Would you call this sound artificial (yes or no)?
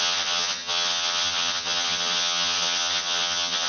yes